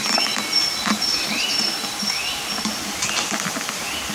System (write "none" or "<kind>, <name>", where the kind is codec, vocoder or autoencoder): none